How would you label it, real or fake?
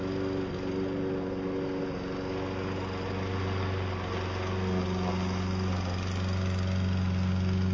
real